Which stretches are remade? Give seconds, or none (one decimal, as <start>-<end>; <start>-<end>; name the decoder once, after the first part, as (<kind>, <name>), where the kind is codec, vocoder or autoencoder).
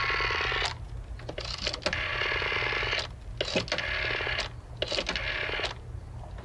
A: none